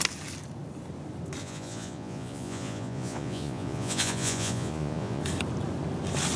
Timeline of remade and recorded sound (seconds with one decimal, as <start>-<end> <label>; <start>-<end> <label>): 0.0-1.4 recorded; 1.4-5.2 remade; 5.2-6.4 recorded